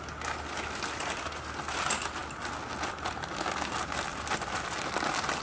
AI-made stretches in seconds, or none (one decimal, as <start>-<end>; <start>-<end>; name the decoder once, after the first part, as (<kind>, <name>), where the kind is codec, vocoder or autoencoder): none